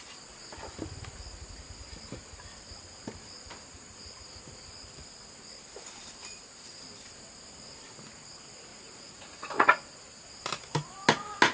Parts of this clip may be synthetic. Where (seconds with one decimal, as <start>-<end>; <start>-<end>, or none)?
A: 8.7-9.8